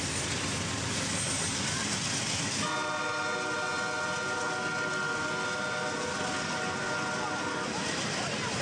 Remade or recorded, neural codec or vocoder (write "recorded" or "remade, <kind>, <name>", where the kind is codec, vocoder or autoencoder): recorded